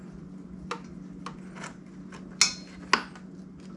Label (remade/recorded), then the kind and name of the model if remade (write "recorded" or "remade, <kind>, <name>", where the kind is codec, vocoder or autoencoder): recorded